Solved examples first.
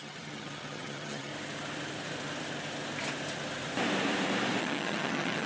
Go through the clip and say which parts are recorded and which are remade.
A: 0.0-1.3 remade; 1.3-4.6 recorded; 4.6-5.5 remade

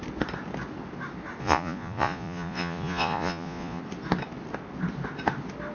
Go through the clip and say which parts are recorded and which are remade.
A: 0.0-1.4 recorded; 1.4-3.8 remade; 3.8-5.7 recorded

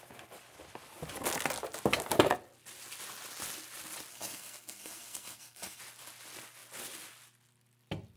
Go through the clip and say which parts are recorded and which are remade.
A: 0.0-4.1 recorded; 4.1-5.8 remade; 5.8-8.2 recorded

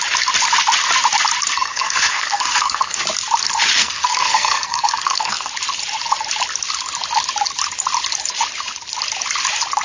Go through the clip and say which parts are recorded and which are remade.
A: 0.0-1.5 recorded; 1.5-3.0 remade; 3.0-3.8 recorded; 3.8-5.5 remade; 5.5-9.8 recorded

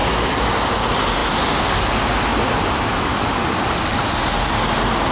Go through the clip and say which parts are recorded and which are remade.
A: 0.0-5.1 recorded